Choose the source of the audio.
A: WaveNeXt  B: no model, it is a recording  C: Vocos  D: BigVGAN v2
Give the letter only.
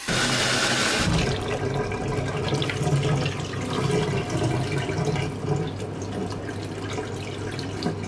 B